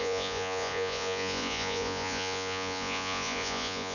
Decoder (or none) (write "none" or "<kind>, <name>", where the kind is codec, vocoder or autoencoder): vocoder, Vocos